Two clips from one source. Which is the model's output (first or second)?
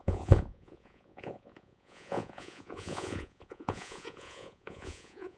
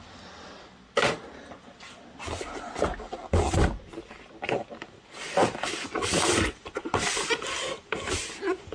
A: first